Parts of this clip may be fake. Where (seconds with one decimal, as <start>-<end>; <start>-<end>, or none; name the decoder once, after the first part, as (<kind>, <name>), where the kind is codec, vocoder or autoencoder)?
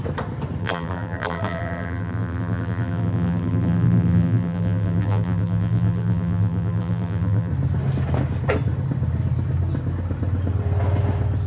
0.6-7.5 (vocoder, BigVGAN v2)